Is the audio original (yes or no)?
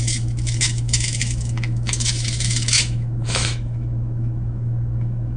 no